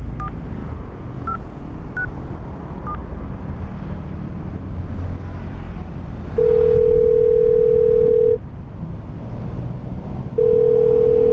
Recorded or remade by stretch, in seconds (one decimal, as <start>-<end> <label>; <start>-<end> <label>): 0.0-0.6 recorded; 0.6-1.8 remade; 1.8-11.3 recorded